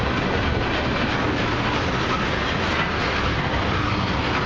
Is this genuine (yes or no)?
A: yes